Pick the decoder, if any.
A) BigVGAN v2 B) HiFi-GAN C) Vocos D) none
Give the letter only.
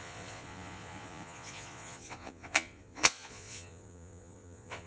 C